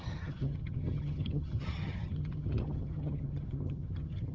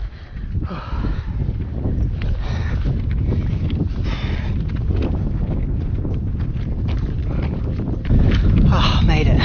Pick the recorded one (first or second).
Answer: second